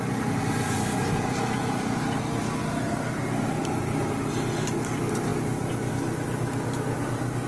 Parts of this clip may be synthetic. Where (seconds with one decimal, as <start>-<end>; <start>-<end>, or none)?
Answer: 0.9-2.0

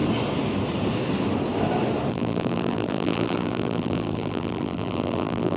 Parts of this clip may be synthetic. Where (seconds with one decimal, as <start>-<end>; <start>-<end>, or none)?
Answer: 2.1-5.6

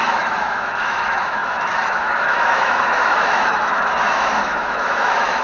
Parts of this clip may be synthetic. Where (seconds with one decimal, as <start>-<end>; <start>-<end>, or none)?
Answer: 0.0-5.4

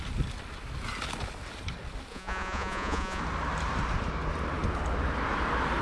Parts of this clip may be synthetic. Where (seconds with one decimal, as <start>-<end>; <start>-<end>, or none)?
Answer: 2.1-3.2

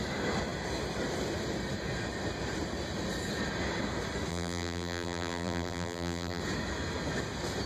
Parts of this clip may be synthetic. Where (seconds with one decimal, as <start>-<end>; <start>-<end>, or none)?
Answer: 4.3-6.4

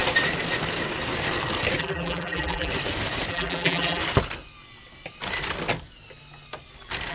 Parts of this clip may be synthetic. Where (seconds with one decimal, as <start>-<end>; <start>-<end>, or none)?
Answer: 1.8-2.7; 3.3-4.0

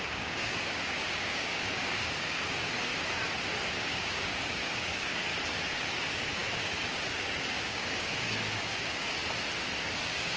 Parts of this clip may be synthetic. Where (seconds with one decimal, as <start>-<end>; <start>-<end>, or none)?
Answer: 0.0-2.9; 3.7-5.3; 5.8-9.2; 9.8-10.4